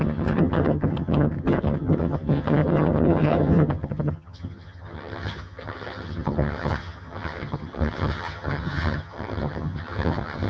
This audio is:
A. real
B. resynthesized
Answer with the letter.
B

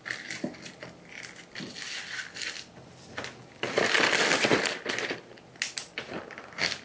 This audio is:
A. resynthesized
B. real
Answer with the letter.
B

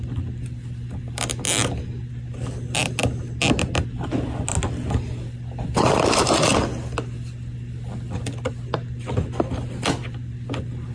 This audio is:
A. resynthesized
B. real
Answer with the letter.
B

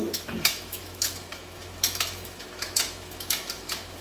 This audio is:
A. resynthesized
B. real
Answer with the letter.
A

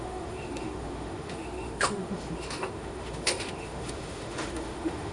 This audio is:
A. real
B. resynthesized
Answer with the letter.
B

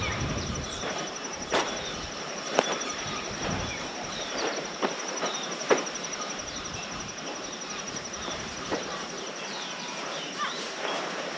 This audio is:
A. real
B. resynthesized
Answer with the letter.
B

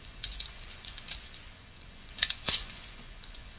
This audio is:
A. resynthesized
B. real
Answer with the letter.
A